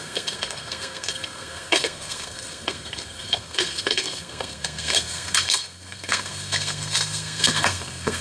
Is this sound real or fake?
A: fake